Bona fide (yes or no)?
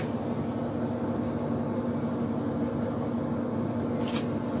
yes